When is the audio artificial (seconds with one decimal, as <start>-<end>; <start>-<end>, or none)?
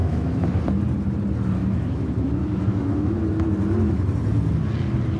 0.0-0.6; 1.6-3.2